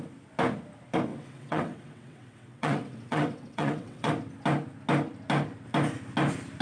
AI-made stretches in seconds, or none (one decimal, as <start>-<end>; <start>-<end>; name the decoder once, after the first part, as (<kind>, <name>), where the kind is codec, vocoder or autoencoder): 1.1-4.1 (vocoder, WaveNeXt)